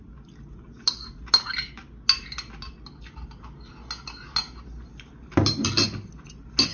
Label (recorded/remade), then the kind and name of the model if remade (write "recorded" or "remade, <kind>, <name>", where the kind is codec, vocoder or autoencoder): recorded